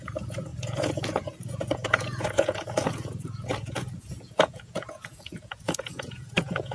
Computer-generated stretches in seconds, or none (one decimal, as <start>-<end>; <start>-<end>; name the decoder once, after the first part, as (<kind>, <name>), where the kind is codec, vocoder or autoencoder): 0.0-6.7 (vocoder, Vocos)